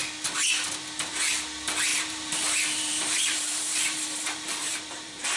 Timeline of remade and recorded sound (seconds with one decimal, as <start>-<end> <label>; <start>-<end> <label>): 0.0-1.9 recorded; 1.9-5.4 remade